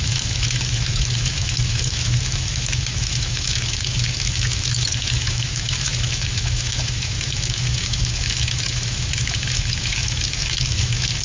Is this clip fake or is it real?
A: fake